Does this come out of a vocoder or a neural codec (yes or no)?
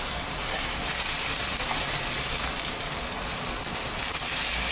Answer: yes